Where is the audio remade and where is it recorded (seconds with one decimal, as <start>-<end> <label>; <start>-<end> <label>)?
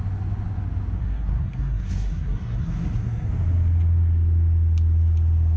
0.0-1.0 recorded; 1.0-3.3 remade; 3.3-5.6 recorded